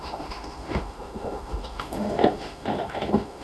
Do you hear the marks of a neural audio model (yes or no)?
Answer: yes